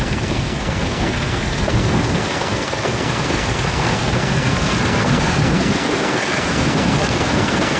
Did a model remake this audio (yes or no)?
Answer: yes